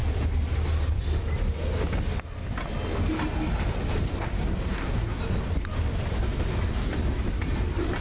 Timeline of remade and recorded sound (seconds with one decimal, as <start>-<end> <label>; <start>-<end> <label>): 0.0-4.1 recorded; 4.1-5.2 remade; 5.2-8.0 recorded